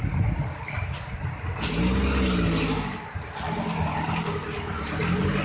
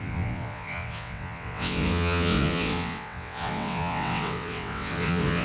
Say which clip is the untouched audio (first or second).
first